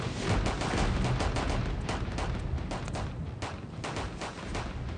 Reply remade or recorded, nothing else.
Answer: recorded